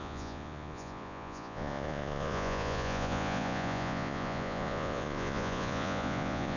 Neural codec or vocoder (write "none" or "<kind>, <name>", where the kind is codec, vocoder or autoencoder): vocoder, Vocos